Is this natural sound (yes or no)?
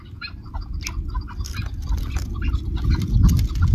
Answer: yes